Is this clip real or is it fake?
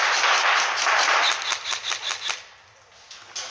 real